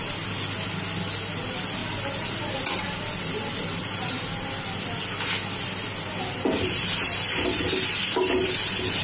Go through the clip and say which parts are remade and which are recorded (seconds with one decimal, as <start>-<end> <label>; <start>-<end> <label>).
0.0-9.0 recorded